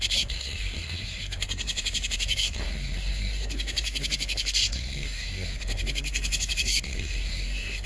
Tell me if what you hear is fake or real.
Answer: fake